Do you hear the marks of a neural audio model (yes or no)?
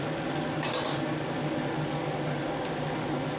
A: no